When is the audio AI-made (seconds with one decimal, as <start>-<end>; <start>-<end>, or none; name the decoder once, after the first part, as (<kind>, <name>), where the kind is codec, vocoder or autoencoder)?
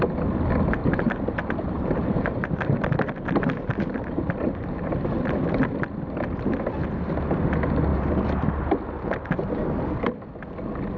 0.8-5.4 (vocoder, BigVGAN v2); 7.9-8.7